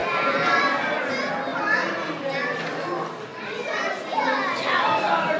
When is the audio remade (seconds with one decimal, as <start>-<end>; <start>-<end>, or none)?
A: 0.0-1.0; 1.5-2.6; 3.3-4.0